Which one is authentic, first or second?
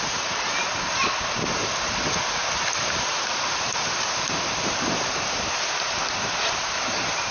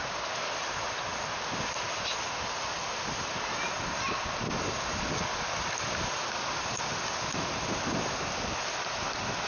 second